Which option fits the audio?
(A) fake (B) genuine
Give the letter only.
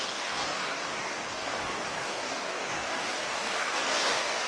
A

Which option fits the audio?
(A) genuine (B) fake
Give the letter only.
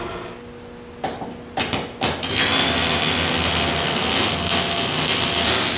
A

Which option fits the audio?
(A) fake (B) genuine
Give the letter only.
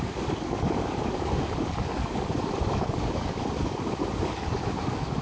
A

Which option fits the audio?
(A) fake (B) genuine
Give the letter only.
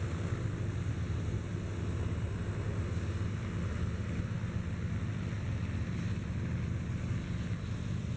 B